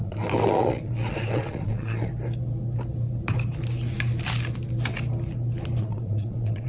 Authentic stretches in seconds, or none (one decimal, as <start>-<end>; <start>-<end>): 2.1-5.8